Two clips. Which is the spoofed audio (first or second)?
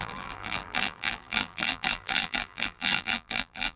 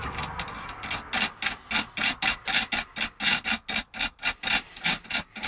first